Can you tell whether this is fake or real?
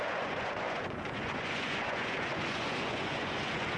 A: fake